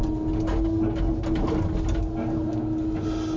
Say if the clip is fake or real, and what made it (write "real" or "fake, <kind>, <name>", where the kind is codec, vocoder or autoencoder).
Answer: real